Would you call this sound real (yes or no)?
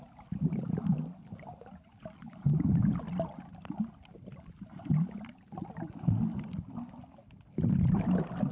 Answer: yes